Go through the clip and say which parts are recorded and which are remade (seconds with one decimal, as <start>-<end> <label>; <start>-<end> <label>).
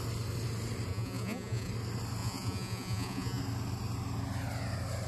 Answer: 0.0-0.9 recorded; 0.9-1.7 remade; 1.7-2.2 recorded; 2.2-3.4 remade; 3.4-5.1 recorded